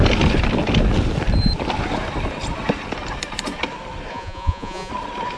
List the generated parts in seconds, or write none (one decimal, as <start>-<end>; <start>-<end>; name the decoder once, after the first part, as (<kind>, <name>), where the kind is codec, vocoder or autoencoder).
4.1-4.9 (vocoder, Vocos)